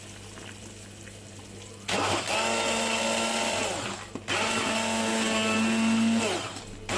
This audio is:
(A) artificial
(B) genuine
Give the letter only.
B